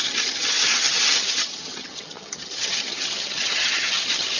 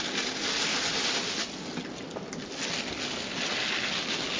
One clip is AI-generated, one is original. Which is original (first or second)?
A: second